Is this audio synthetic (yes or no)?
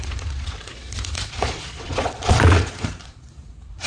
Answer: yes